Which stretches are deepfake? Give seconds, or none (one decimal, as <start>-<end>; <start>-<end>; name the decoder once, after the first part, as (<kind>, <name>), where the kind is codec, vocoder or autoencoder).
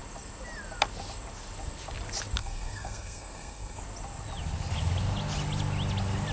2.4-3.8 (codec, SNAC)